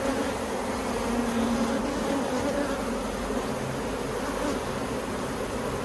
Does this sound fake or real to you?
real